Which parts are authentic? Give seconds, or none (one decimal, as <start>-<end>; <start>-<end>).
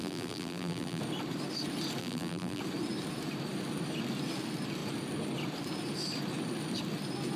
1.0-2.0; 2.6-7.4